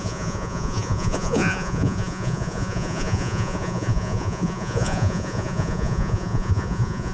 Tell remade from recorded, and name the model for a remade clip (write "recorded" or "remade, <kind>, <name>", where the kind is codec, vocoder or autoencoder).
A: remade, vocoder, Vocos